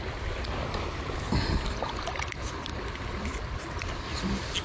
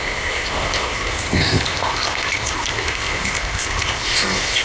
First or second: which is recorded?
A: first